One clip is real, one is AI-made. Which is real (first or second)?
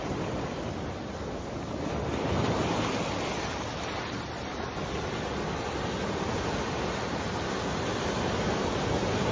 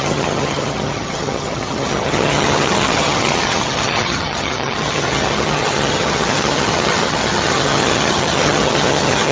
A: first